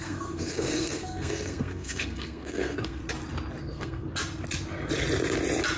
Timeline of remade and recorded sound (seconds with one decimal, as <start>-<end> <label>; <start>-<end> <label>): 0.0-3.0 remade; 3.0-3.6 recorded; 3.6-4.0 remade; 4.0-5.8 recorded

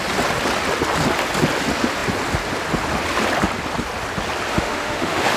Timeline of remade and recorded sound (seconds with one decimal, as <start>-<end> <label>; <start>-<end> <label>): 0.0-4.5 recorded; 4.5-5.4 remade